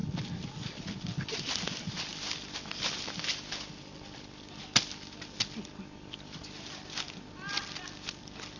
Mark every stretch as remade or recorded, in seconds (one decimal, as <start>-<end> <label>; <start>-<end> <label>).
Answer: 0.0-8.6 recorded